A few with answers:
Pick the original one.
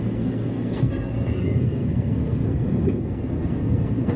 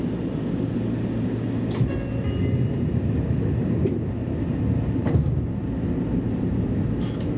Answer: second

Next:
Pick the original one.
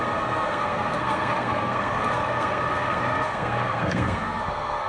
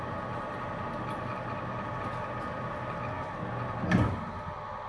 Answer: second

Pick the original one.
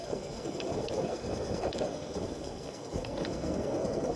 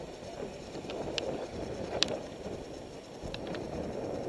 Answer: second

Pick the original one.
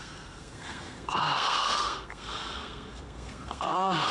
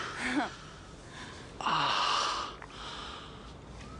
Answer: second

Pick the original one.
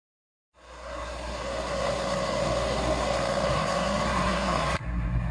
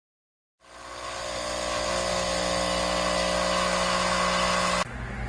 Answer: second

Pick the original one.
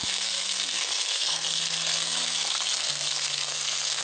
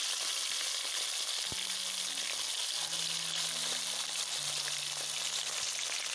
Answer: second